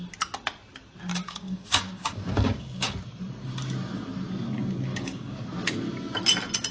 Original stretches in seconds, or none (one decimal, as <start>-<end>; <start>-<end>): 0.0-1.1; 2.9-4.9; 5.4-6.7